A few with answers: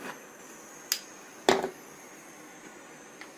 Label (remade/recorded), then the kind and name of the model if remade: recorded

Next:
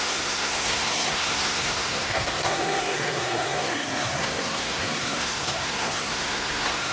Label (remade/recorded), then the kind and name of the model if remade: remade, codec, SNAC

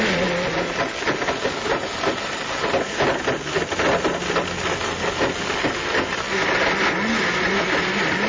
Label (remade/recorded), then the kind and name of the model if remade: recorded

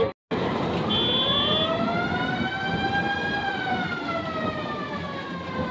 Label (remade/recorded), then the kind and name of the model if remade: recorded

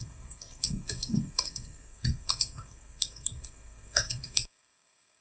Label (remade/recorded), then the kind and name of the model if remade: remade, codec, SNAC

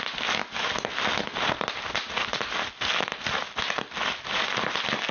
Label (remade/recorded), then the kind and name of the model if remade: recorded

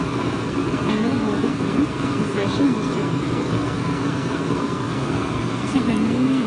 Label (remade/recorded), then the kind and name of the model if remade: remade, codec, SNAC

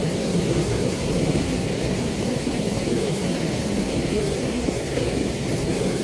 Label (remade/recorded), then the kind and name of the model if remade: remade, codec, SNAC